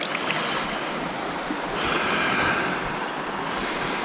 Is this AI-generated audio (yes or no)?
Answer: no